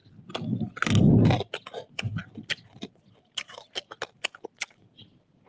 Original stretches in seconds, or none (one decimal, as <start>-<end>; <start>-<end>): 0.0-5.5